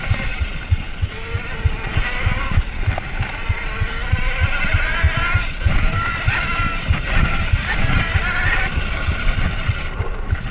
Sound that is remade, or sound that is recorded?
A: recorded